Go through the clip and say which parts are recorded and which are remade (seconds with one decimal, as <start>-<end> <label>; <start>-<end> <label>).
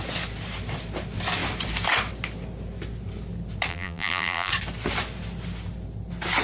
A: 0.0-3.7 recorded; 3.7-4.5 remade; 4.5-6.4 recorded